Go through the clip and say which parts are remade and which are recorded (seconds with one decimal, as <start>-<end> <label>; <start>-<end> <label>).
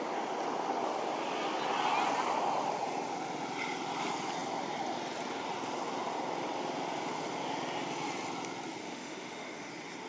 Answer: 0.0-8.8 recorded; 8.8-9.7 remade; 9.7-10.1 recorded